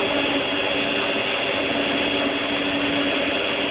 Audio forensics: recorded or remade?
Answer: recorded